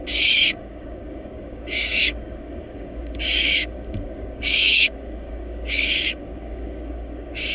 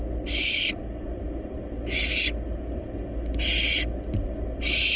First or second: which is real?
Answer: second